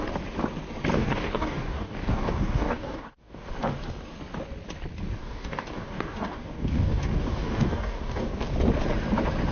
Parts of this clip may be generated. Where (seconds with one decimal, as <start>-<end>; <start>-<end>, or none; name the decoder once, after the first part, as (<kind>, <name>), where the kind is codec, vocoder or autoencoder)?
0.9-3.5 (codec, DAC); 5.2-8.5